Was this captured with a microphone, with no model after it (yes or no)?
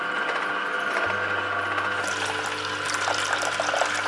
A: yes